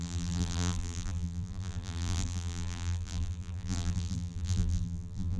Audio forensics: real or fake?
fake